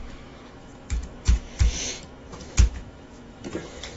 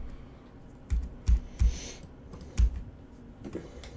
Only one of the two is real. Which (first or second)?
second